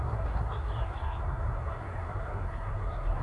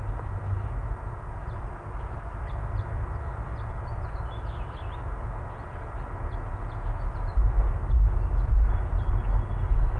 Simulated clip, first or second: first